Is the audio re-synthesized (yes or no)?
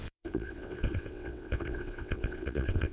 yes